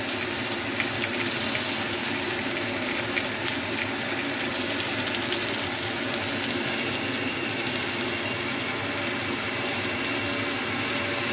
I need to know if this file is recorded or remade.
recorded